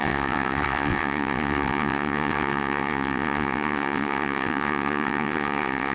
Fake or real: fake